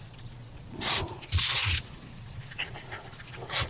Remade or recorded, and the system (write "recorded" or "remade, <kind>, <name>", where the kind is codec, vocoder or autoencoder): remade, vocoder, Vocos